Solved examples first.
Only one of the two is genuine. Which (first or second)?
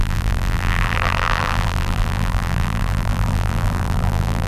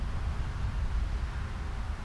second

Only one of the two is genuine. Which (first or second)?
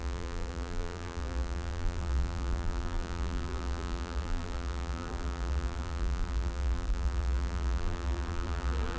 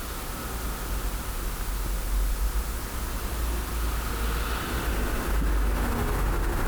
second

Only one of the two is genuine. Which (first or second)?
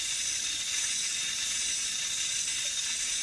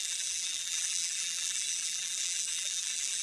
first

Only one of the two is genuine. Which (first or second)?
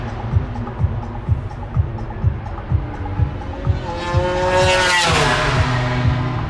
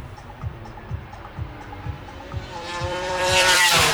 first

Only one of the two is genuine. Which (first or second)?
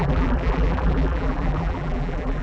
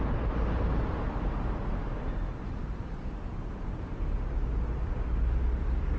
second